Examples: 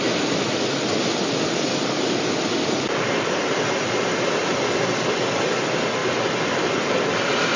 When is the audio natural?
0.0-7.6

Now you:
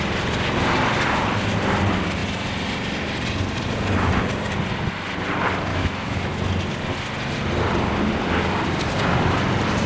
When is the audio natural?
0.0-5.7; 6.4-9.9

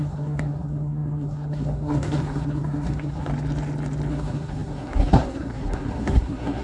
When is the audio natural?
3.3-4.1

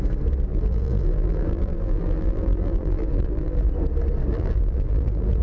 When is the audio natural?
0.0-0.5; 3.7-4.3

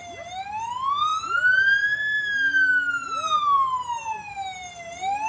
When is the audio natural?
0.0-5.3

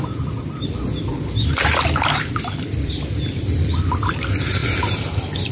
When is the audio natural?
4.6-5.5